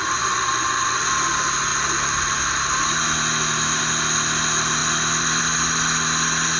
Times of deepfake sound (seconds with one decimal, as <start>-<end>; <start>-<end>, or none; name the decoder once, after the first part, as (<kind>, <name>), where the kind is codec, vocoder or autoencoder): none